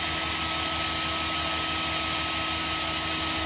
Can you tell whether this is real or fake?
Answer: real